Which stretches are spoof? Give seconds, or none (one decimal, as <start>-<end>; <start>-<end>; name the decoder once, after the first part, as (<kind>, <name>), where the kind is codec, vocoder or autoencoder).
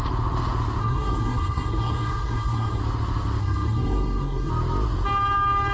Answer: 0.8-2.8 (codec, SNAC); 3.4-4.5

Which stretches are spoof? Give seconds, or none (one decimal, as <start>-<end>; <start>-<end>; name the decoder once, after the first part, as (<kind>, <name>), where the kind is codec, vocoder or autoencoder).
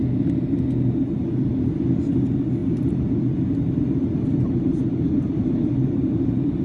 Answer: 2.6-6.6 (vocoder, BigVGAN v2)